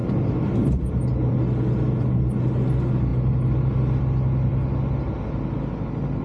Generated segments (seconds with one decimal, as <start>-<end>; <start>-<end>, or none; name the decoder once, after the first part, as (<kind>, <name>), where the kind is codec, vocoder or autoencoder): none